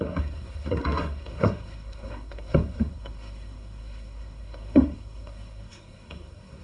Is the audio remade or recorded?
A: remade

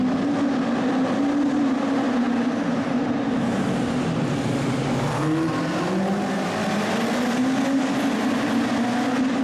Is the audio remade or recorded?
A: recorded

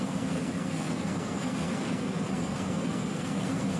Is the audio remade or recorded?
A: remade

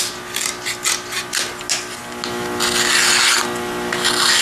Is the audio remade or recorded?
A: recorded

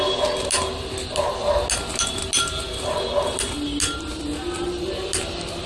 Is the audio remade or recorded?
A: recorded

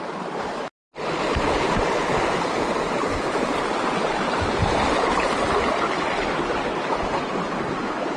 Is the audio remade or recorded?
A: recorded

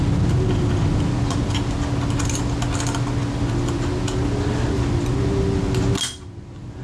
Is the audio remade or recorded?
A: recorded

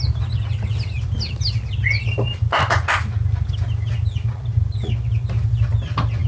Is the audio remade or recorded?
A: recorded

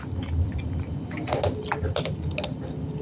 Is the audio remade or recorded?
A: recorded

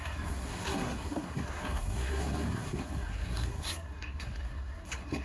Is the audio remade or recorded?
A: remade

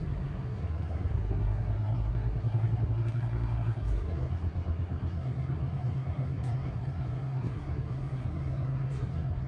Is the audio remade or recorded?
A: remade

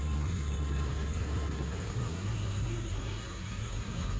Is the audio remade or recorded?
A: remade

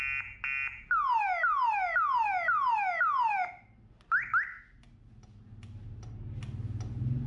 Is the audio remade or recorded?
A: recorded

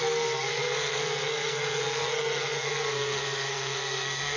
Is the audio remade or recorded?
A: remade